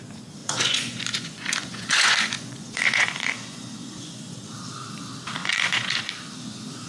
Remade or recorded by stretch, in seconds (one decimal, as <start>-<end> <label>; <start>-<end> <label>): 0.0-0.4 recorded; 0.4-4.5 remade; 4.5-5.4 recorded; 5.4-6.0 remade; 6.0-6.9 recorded